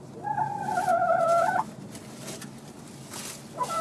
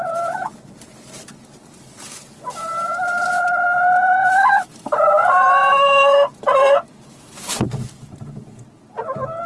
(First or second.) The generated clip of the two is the second